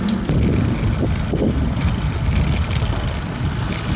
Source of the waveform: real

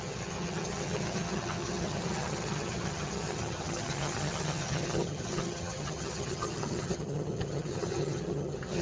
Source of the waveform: fake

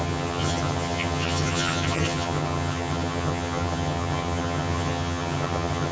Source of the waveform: fake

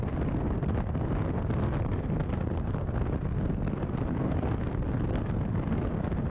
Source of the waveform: real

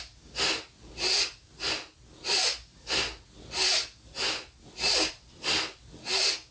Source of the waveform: real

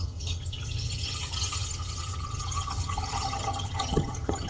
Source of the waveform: fake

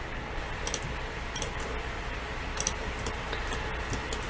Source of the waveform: real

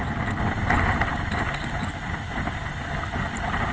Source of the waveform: real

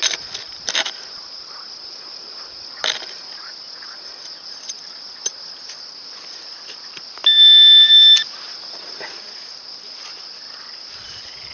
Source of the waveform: real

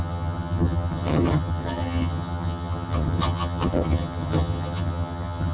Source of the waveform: fake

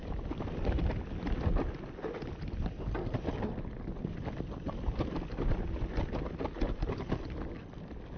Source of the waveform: real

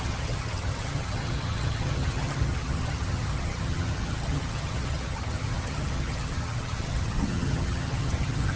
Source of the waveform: fake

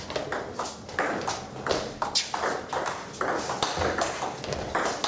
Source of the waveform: real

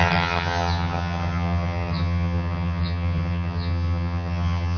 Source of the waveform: fake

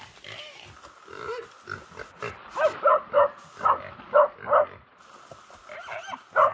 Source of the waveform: real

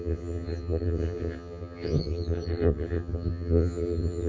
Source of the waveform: fake